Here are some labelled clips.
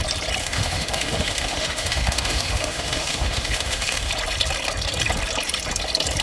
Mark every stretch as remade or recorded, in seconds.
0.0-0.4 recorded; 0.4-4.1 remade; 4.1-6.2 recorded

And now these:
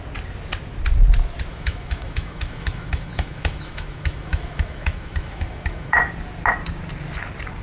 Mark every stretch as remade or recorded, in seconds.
0.0-1.5 recorded; 1.5-6.1 remade; 6.1-7.6 recorded

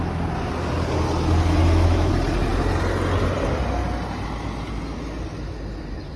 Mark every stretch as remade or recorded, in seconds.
0.0-1.6 recorded; 1.6-2.1 remade; 2.1-6.2 recorded